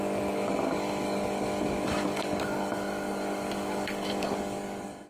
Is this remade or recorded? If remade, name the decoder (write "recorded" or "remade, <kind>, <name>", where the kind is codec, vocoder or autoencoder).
remade, codec, DAC